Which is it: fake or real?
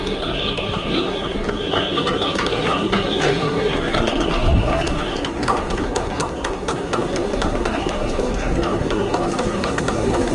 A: fake